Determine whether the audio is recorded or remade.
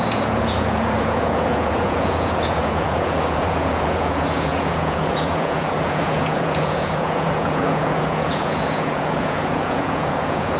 remade